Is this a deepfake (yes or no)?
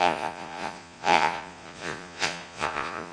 yes